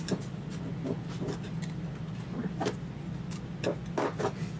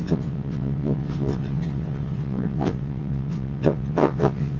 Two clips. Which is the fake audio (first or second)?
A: second